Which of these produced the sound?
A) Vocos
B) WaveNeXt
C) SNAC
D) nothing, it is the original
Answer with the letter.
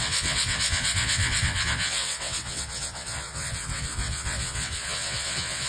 B